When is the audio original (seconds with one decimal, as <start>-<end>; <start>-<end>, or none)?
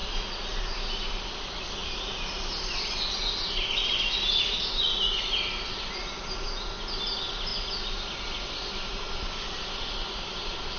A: 0.0-10.8